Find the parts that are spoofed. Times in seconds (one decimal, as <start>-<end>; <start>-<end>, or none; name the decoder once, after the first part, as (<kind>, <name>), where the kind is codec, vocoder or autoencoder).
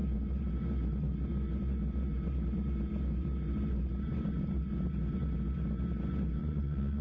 6.4-7.0 (vocoder, Vocos)